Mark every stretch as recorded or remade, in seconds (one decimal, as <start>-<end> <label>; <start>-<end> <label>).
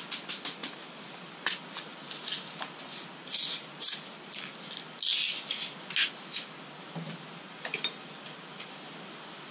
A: 0.0-9.5 recorded